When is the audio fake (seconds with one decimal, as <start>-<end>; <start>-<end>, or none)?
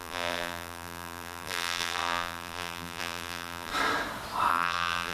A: 0.0-3.7; 4.5-5.1